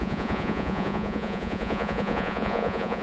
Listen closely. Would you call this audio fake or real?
fake